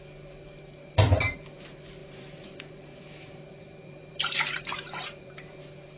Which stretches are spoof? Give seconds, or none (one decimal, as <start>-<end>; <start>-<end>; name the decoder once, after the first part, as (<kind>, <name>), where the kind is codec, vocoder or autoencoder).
2.0-5.6 (vocoder, BigVGAN v2)